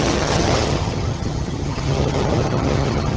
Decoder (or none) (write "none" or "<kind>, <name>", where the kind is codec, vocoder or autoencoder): vocoder, HiFi-GAN